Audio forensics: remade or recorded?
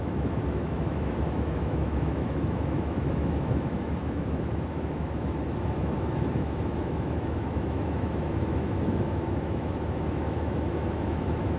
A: remade